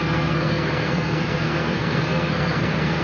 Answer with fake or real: fake